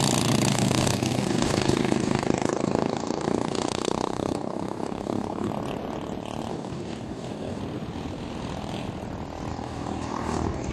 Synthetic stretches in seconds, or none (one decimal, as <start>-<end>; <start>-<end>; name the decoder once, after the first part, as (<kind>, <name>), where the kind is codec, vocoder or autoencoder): 0.5-5.5 (codec, DAC); 6.5-7.6; 9.5-10.7